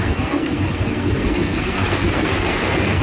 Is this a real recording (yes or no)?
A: no